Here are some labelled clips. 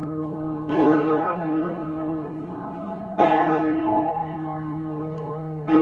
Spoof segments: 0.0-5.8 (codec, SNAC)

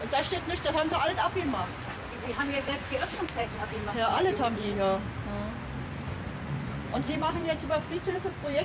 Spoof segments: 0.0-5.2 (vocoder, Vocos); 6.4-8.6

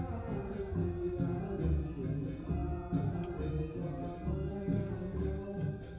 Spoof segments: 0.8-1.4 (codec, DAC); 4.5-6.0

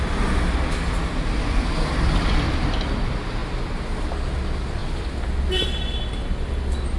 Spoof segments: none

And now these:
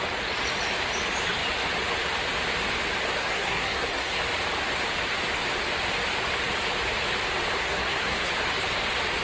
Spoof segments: 3.2-4.2 (codec, SNAC); 7.6-8.3

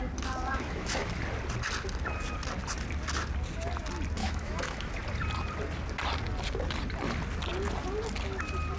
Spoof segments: 0.5-1.1 (autoencoder, DAC-VAE); 4.2-4.9

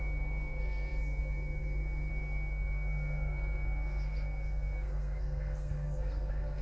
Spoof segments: 0.0-6.6 (codec, SNAC)